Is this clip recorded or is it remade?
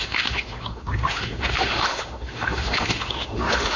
remade